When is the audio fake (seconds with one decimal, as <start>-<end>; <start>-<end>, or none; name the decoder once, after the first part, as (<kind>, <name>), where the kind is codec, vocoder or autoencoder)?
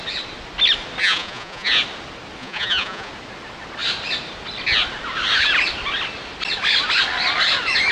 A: 1.0-1.7 (vocoder, Vocos); 2.4-3.1